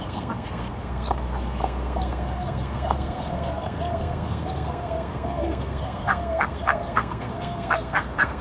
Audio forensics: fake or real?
fake